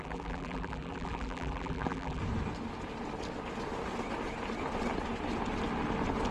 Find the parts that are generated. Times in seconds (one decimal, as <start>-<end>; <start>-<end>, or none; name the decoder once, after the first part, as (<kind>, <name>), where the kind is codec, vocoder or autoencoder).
0.0-2.2 (vocoder, BigVGAN v2)